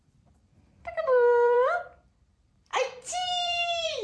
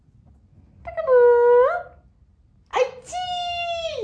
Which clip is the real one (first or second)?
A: second